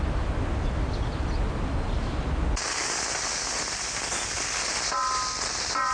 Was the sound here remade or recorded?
recorded